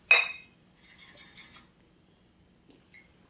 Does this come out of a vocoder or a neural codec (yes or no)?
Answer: no